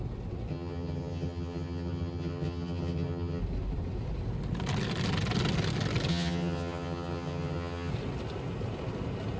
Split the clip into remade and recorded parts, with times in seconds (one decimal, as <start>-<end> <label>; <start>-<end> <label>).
0.0-0.5 recorded; 0.5-3.4 remade; 3.4-6.1 recorded; 6.1-7.9 remade; 7.9-9.4 recorded